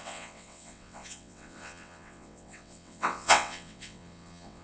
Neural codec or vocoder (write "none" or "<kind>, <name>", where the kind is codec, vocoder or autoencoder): vocoder, WaveNeXt